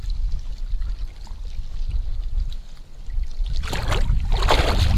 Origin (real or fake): real